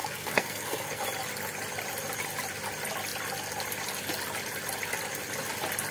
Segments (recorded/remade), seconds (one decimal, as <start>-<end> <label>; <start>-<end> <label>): 0.0-1.0 remade; 1.0-5.9 recorded